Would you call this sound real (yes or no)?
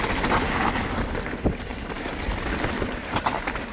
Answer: yes